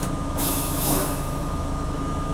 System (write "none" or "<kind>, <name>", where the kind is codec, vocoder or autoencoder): autoencoder, DAC-VAE